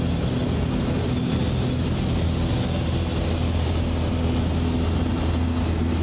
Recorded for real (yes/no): yes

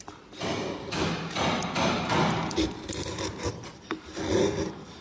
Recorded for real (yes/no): yes